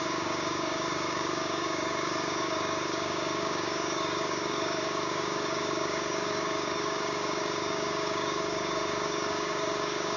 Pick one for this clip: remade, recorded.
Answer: remade